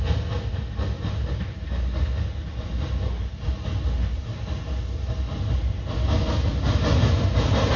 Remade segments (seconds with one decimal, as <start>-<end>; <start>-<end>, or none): none